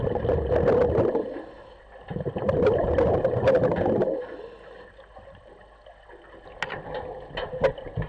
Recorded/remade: recorded